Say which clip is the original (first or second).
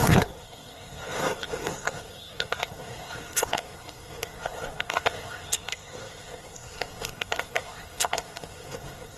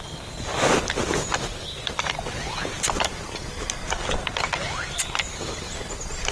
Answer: second